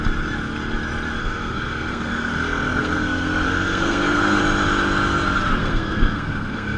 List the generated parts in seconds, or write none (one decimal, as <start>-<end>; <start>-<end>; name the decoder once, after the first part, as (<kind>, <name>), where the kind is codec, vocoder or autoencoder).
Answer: 1.2-4.4 (codec, SNAC); 5.6-6.8